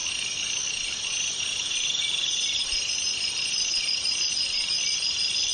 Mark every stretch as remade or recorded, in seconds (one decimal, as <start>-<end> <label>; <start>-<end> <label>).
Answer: 0.0-0.6 remade; 0.6-1.1 recorded; 1.1-4.2 remade; 4.2-5.5 recorded